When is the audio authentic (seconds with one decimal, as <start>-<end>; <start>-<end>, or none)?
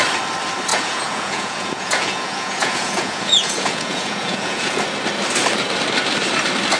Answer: 0.0-0.7; 4.8-6.8